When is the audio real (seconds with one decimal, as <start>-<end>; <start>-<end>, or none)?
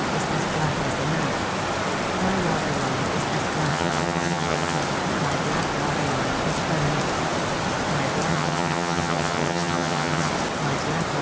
0.0-3.7; 4.8-8.3; 10.3-11.2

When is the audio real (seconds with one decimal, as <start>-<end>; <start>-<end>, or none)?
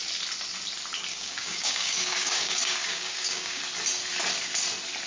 0.0-1.1; 3.6-5.1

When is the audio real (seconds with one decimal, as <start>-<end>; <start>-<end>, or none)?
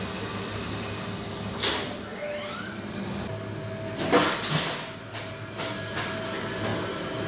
0.0-7.3